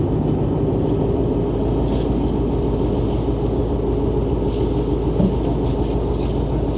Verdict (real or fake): real